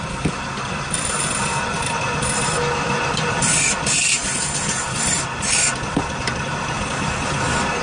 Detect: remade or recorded recorded